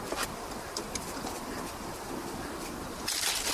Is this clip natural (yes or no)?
no